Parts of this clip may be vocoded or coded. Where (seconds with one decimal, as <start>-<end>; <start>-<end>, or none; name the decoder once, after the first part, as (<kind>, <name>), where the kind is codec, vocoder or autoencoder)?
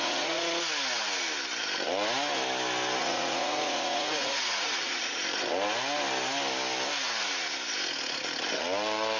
0.0-0.4 (vocoder, Vocos); 3.0-5.2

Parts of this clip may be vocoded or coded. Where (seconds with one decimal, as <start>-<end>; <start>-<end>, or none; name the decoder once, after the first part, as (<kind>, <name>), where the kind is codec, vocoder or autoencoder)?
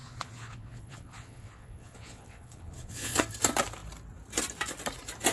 0.0-3.2 (vocoder, Vocos)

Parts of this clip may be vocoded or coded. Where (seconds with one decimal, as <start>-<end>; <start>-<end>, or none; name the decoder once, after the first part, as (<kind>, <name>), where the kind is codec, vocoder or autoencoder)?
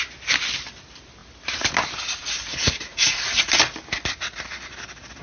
2.9-3.6 (vocoder, Vocos)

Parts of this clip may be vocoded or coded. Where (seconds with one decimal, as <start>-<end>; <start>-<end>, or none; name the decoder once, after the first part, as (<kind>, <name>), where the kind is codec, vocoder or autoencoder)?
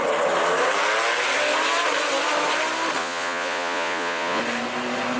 3.0-4.4 (vocoder, Vocos)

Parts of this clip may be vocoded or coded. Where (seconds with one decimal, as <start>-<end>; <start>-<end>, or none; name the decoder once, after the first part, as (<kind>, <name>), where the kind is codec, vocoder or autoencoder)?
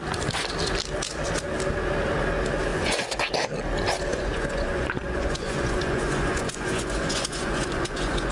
2.7-3.3 (vocoder, Vocos); 4.1-8.3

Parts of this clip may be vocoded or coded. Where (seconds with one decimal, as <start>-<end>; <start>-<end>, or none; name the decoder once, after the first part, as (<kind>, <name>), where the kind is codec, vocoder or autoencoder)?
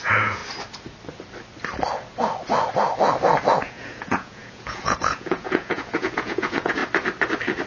0.0-0.4 (vocoder, Vocos); 3.6-6.8